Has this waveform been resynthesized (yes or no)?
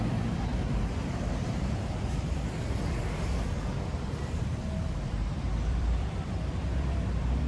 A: yes